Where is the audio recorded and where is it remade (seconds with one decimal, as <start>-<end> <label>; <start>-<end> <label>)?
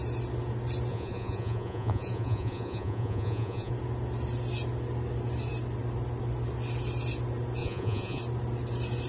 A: 0.0-0.9 recorded; 0.9-3.7 remade; 3.7-7.6 recorded; 7.6-8.2 remade; 8.2-9.1 recorded